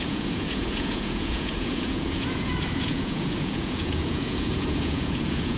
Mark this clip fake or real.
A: fake